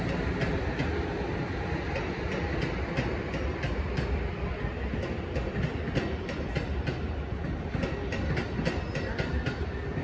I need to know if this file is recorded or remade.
recorded